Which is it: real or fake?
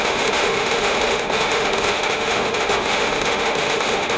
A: fake